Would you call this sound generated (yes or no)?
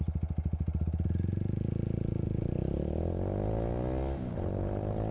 no